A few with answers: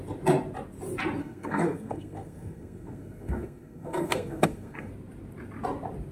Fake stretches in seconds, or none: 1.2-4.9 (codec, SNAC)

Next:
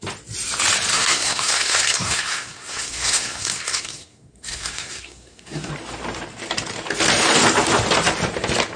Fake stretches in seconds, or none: 0.9-5.7 (codec, SNAC)

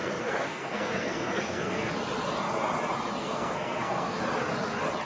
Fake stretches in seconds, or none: 0.0-1.9 (codec, SNAC); 3.2-4.2

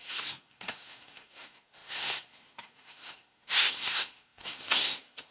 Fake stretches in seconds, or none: 0.0-5.3 (codec, SNAC)

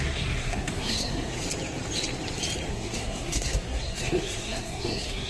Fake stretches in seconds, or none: 0.0-1.4 (codec, SNAC); 2.7-5.3

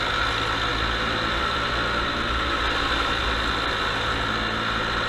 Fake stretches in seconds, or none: none

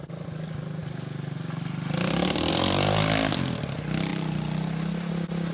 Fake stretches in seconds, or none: none

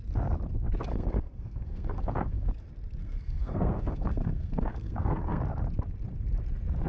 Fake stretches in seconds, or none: 0.9-2.5 (codec, SNAC); 3.0-5.4